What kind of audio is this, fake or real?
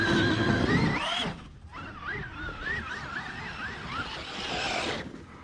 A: real